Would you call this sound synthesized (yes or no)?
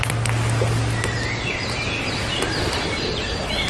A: no